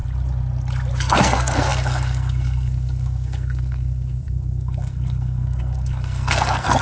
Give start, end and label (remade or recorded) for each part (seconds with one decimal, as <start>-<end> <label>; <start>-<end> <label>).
0.0-1.0 recorded; 1.0-6.8 remade